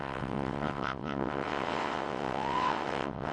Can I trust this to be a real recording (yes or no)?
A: no